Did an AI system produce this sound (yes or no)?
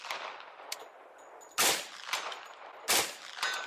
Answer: no